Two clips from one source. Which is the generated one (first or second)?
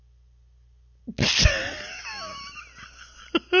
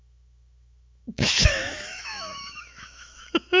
second